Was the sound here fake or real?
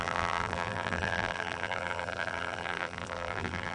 fake